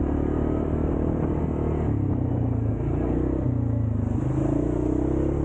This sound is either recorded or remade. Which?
recorded